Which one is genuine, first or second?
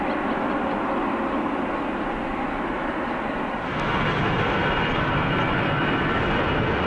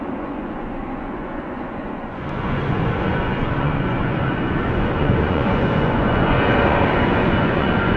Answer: first